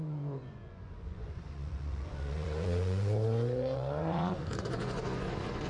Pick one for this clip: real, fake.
fake